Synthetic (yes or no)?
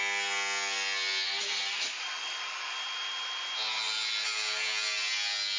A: no